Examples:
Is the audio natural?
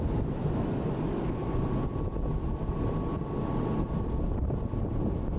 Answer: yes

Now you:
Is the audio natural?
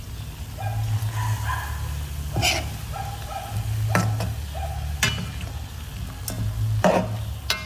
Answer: yes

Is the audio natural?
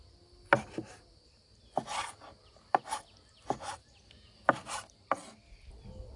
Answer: yes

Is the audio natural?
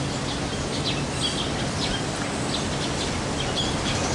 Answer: yes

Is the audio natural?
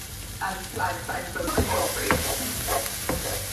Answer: yes